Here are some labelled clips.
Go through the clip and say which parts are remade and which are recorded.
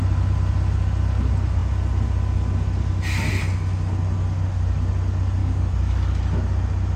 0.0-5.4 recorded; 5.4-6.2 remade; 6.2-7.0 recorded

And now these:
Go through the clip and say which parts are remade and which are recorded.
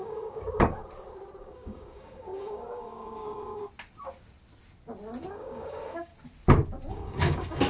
0.0-0.8 remade; 0.8-1.4 recorded; 1.4-3.6 remade; 3.6-5.3 recorded; 5.3-6.1 remade; 6.1-6.9 recorded; 6.9-7.7 remade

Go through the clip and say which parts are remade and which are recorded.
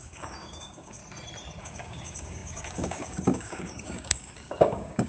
0.0-1.0 remade; 1.0-1.6 recorded; 1.6-5.1 remade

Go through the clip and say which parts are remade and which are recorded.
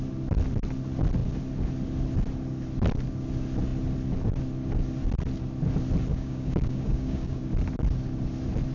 0.0-6.1 recorded; 6.1-7.4 remade; 7.4-8.7 recorded